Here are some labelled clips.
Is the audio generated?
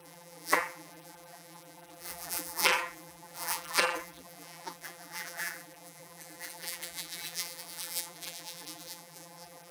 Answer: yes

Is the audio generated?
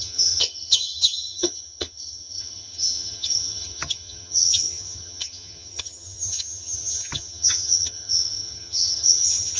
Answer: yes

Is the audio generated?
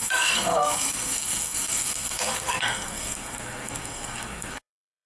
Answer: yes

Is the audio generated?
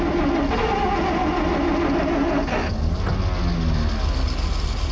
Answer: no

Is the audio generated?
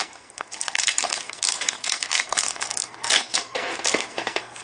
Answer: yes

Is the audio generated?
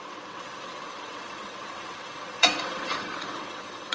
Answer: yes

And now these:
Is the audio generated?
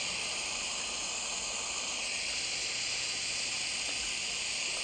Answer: no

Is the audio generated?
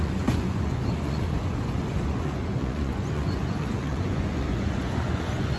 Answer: yes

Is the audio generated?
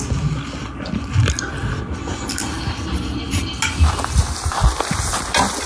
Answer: no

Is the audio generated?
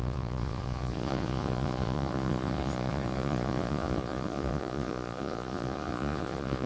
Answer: yes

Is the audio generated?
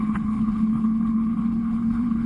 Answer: yes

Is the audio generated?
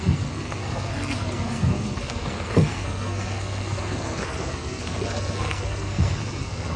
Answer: yes